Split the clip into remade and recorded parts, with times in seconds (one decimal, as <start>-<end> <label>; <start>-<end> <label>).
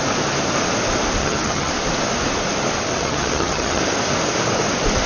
0.0-1.2 recorded; 1.2-1.7 remade; 1.7-3.0 recorded; 3.0-3.8 remade; 3.8-5.1 recorded